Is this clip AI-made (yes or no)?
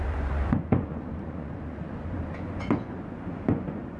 yes